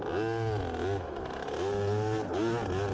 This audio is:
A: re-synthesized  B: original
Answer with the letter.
B